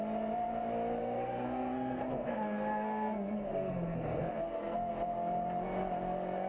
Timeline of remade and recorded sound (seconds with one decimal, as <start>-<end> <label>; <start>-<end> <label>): 0.0-1.0 recorded; 1.0-4.9 remade; 4.9-6.5 recorded